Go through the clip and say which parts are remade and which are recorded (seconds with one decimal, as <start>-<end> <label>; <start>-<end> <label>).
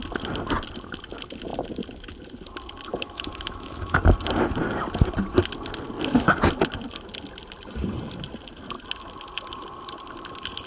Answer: 0.0-2.9 recorded; 2.9-4.0 remade; 4.0-10.7 recorded